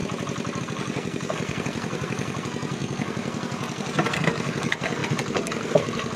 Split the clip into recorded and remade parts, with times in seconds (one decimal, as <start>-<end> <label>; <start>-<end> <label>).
0.0-0.6 recorded; 0.6-6.2 remade